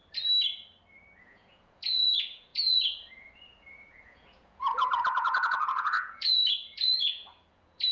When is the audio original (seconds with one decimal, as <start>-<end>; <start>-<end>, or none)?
0.0-1.2